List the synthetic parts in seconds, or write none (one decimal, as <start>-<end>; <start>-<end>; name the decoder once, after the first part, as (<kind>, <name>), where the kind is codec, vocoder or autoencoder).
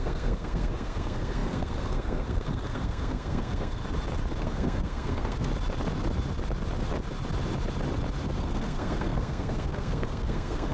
0.0-3.8 (codec, SNAC); 4.4-5.5; 8.4-10.7